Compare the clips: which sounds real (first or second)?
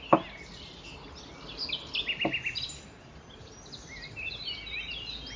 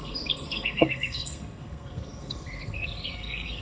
first